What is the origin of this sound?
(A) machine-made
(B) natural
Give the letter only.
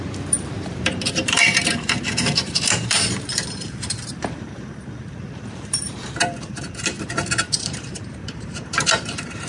A